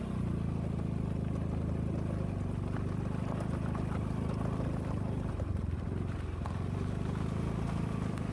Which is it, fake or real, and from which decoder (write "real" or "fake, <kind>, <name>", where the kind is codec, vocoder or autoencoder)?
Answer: real